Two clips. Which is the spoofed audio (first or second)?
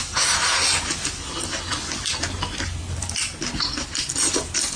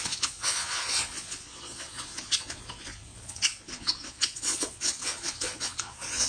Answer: second